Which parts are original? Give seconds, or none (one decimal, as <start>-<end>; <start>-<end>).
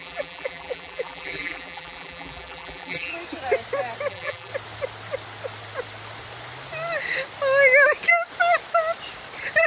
3.1-4.1; 4.5-9.7